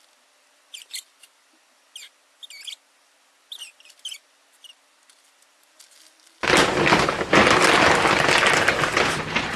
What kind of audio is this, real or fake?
real